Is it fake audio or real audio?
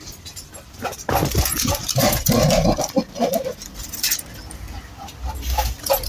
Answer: real